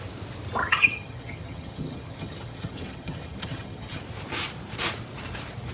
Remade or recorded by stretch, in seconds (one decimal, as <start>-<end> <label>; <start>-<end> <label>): 0.0-0.6 recorded; 0.6-4.0 remade; 4.0-5.7 recorded